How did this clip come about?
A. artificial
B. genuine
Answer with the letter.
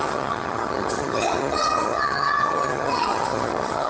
A